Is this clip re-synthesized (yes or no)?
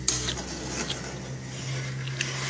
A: no